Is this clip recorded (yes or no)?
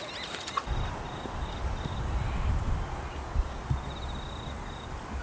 yes